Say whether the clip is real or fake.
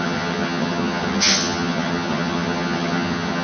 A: fake